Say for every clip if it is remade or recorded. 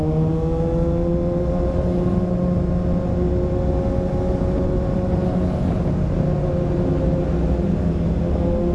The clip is recorded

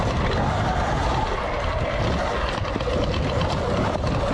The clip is recorded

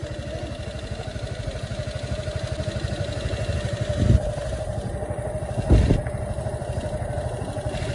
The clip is recorded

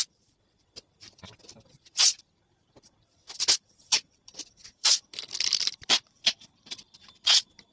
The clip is remade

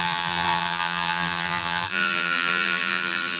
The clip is remade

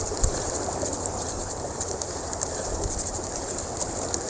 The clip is recorded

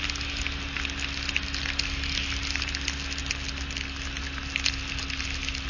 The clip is recorded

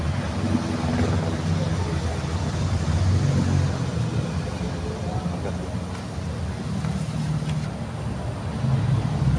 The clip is recorded